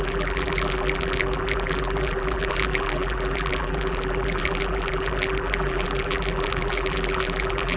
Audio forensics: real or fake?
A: fake